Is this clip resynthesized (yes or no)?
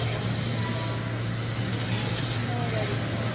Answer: no